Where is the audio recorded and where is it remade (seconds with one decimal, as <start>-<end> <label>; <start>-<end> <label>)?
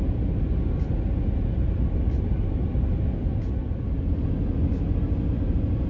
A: 0.0-5.9 recorded